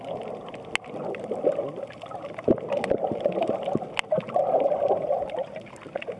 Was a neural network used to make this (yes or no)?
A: no